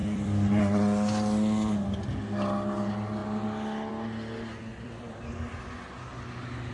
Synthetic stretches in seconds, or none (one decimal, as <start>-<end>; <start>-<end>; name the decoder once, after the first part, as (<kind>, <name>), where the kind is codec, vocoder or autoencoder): 0.0-0.6 (vocoder, BigVGAN v2); 4.7-5.3